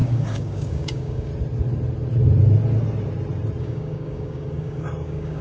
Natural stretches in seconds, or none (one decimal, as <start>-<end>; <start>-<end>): 1.3-3.6